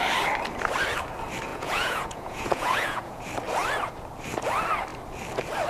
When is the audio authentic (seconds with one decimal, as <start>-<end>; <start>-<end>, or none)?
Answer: 0.0-1.5; 3.2-5.7